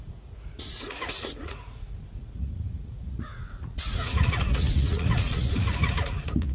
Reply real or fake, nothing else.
fake